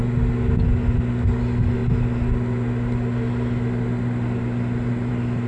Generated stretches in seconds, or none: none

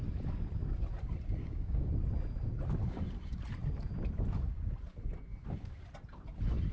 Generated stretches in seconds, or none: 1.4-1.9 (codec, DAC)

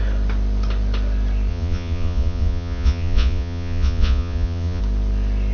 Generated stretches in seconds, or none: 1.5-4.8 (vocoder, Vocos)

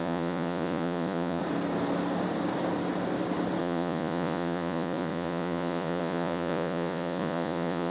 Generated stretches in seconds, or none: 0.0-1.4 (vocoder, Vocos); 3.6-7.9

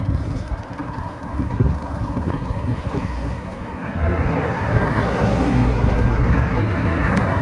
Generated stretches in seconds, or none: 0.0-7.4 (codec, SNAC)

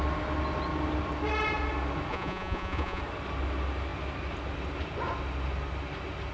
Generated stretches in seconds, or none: 2.1-3.0 (vocoder, Vocos)

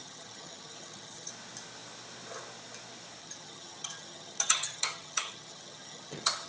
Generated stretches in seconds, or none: 0.0-1.3 (vocoder, HiFi-GAN); 3.2-6.5